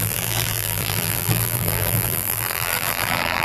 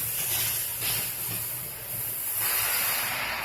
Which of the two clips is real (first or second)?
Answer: second